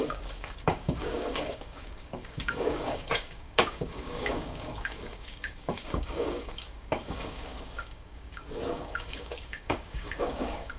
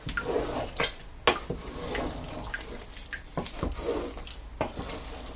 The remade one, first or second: first